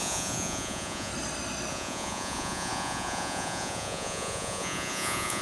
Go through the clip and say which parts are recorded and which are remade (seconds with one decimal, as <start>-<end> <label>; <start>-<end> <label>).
0.0-1.1 remade; 1.1-1.7 recorded; 1.7-5.4 remade